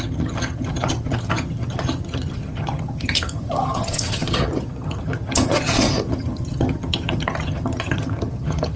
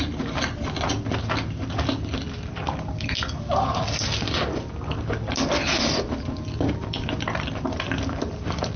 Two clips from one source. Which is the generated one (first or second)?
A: first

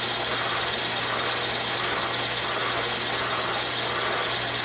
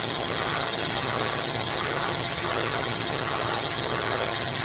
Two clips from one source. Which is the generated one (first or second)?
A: second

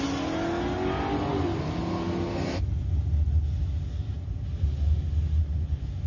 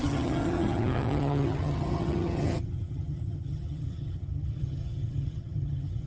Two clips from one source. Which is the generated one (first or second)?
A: second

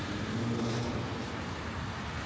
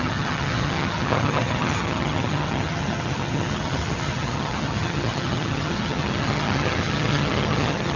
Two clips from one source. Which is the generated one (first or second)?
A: second